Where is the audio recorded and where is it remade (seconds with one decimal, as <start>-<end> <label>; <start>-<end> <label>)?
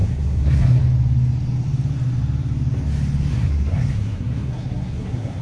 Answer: 0.0-0.8 remade; 0.8-3.3 recorded; 3.3-5.4 remade